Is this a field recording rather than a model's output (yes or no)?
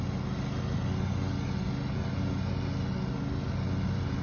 yes